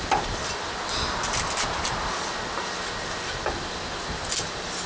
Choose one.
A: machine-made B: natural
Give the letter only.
B